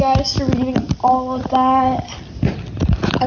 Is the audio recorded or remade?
recorded